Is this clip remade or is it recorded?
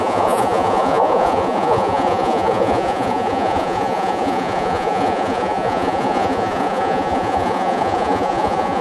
remade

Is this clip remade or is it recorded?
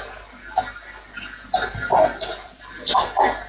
remade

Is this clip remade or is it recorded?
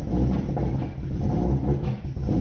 recorded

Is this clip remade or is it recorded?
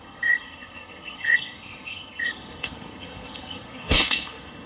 remade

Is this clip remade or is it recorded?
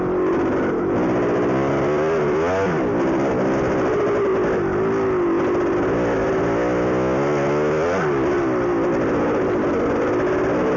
recorded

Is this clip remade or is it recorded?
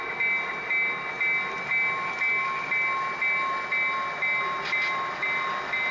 recorded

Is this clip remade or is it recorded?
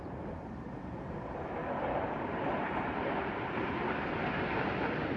remade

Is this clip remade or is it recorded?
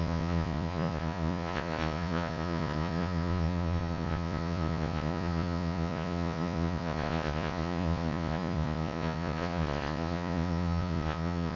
remade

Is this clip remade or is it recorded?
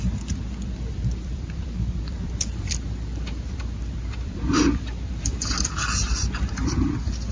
remade